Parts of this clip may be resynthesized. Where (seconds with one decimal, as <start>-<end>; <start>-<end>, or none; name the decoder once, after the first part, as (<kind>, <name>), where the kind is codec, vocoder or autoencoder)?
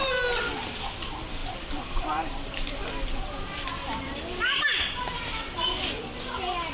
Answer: 1.4-2.8 (vocoder, BigVGAN v2); 3.8-6.0